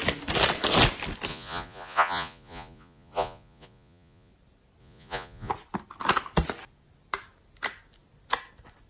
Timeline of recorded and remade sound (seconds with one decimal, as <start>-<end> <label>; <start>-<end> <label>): 0.0-1.3 recorded; 1.3-4.3 remade; 4.3-4.8 recorded; 4.8-5.5 remade; 5.5-8.9 recorded